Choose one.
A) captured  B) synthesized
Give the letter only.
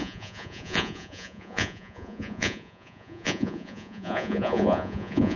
B